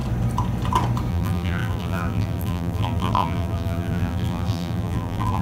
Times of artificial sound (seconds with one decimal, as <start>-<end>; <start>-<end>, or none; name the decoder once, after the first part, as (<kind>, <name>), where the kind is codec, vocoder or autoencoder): 1.1-5.4 (vocoder, BigVGAN v2)